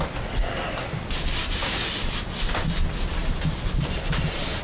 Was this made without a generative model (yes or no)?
yes